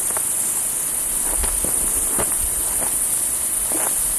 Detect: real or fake real